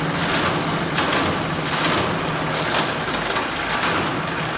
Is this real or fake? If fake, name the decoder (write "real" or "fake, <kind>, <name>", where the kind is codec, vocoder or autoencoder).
real